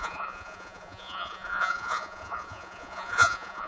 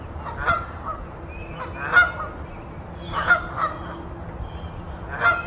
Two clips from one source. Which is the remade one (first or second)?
first